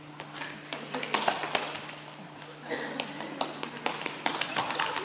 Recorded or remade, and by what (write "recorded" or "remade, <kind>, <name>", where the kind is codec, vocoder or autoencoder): recorded